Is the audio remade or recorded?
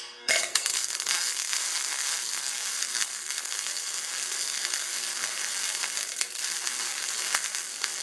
remade